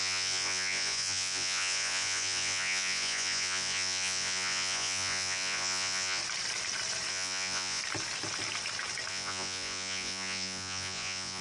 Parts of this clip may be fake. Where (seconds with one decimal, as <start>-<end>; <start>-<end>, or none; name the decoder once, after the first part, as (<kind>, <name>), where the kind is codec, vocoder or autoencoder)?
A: 0.0-6.2 (vocoder, Vocos); 7.1-7.8; 9.1-11.4